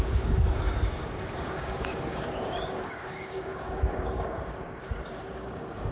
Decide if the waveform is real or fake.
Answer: fake